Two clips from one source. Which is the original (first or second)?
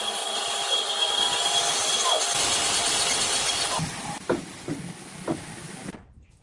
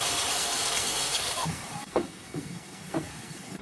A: first